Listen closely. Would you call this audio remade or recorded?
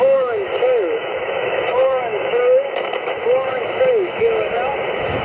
remade